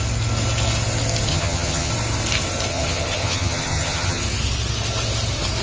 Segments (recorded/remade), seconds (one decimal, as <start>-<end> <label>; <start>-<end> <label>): 0.0-1.3 recorded; 1.3-1.9 remade; 1.9-2.7 recorded; 2.7-4.2 remade; 4.2-5.6 recorded